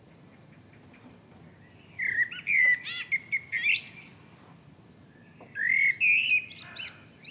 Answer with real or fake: real